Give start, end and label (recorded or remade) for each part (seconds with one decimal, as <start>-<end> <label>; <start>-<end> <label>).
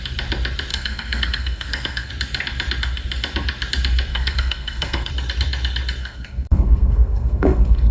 0.0-0.7 recorded; 0.7-2.1 remade; 2.1-4.1 recorded; 4.1-5.1 remade; 5.1-6.0 recorded; 6.0-7.9 remade